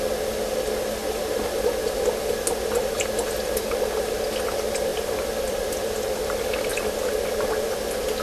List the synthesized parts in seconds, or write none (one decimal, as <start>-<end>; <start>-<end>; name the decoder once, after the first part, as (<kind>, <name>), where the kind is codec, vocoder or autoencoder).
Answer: 4.9-5.8 (vocoder, BigVGAN v2); 6.7-7.2